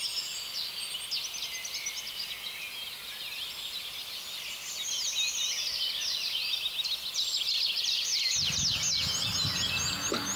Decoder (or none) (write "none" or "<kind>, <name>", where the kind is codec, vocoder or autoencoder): none